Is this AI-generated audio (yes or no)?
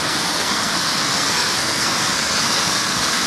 yes